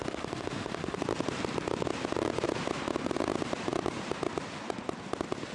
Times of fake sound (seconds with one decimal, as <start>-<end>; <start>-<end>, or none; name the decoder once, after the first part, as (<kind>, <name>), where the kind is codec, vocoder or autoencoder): 0.0-1.0 (autoencoder, DAC-VAE)